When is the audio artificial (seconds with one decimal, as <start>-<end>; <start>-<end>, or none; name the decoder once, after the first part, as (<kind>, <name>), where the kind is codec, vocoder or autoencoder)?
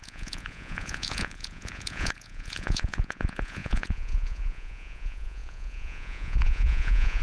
0.0-7.2 (vocoder, Vocos)